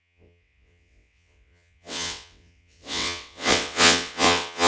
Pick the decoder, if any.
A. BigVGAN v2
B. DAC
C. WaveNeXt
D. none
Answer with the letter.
C